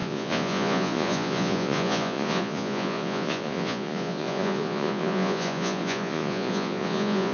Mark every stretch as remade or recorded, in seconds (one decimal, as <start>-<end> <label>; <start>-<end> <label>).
0.0-7.3 remade